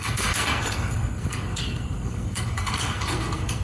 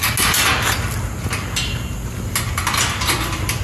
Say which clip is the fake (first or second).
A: first